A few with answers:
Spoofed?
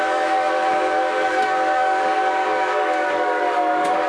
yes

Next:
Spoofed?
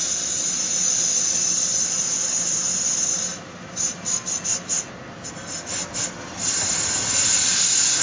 no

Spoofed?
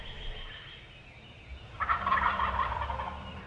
no